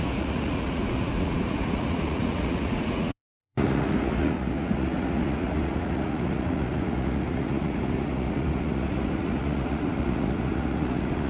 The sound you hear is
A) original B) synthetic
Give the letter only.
B